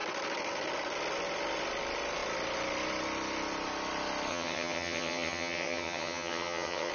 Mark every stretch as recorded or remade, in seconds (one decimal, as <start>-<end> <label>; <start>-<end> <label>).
0.0-4.3 recorded; 4.3-6.9 remade